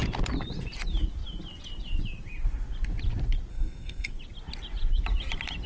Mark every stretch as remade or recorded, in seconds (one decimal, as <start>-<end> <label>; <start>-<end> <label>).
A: 0.0-3.5 recorded; 3.5-4.1 remade; 4.1-5.7 recorded